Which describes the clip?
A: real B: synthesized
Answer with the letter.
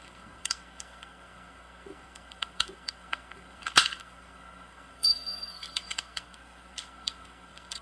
B